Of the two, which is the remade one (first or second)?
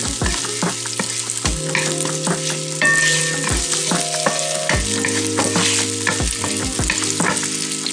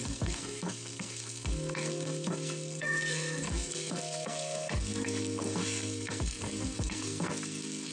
second